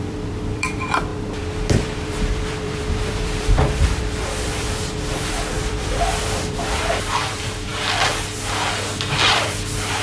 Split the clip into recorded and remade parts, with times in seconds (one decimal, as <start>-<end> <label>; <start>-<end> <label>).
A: 0.0-7.7 remade; 7.7-9.3 recorded; 9.3-10.0 remade